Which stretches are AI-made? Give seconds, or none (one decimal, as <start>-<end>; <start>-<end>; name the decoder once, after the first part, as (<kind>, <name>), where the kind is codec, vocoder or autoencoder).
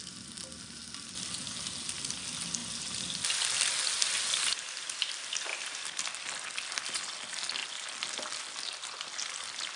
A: none